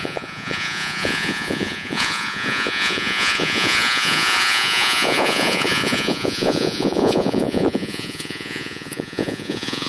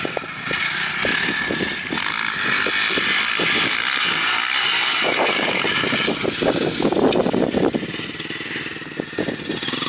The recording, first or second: second